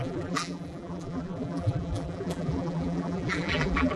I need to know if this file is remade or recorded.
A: remade